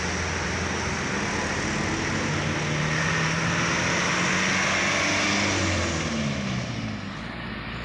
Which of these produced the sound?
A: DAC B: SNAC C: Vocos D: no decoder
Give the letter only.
D